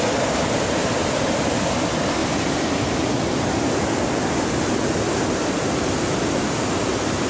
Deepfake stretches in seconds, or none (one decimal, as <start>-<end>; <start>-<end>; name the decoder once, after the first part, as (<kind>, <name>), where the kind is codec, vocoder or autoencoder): none